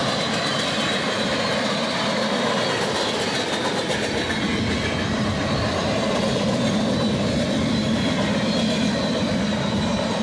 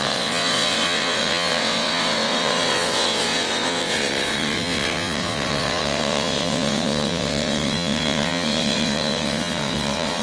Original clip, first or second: first